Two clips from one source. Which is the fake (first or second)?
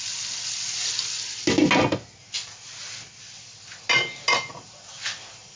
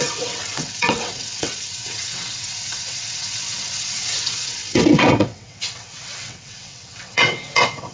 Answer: second